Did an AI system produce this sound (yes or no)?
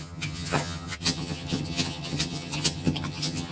yes